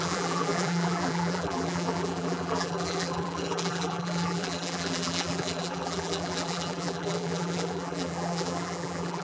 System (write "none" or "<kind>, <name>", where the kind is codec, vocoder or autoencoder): vocoder, BigVGAN v2